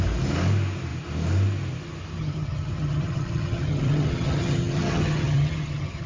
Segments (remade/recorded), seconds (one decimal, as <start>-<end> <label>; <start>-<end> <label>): 0.0-2.2 recorded; 2.2-6.1 remade